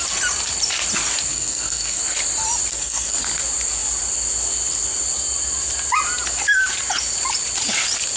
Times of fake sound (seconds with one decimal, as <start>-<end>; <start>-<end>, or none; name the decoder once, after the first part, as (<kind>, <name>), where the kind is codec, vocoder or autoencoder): 1.3-2.0 (codec, SNAC); 2.7-3.2